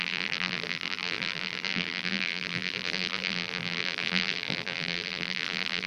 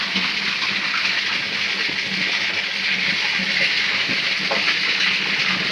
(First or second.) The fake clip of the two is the first